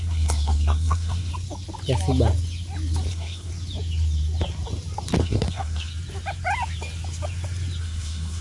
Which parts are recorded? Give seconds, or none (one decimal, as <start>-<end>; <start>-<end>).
1.3-3.1; 3.5-5.2; 5.9-7.8